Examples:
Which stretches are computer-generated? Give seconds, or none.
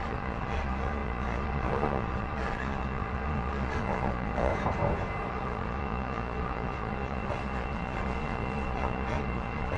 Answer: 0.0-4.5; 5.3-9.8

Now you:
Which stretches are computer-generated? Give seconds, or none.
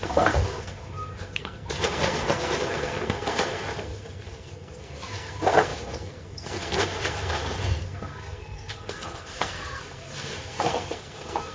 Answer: 0.0-11.5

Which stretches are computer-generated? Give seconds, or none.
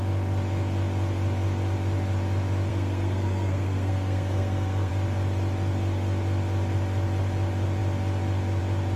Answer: 2.7-4.9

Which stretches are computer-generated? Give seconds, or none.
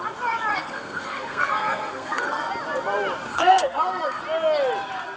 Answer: 0.5-2.5; 3.3-4.2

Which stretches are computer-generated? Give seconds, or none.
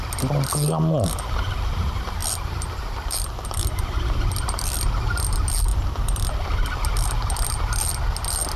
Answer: 2.2-4.9; 5.7-7.7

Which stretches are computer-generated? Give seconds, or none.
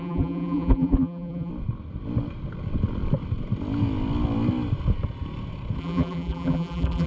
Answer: 0.0-1.5; 5.8-7.1